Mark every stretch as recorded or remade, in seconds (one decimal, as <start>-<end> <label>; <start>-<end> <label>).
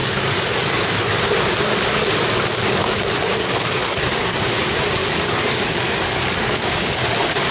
0.0-1.2 remade; 1.2-2.8 recorded; 2.8-4.4 remade; 4.4-5.0 recorded; 5.0-7.1 remade; 7.1-7.5 recorded